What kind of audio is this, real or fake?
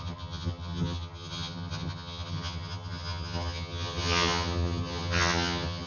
fake